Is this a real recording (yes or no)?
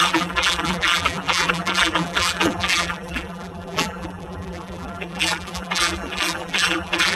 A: no